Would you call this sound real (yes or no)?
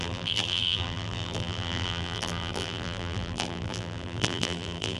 no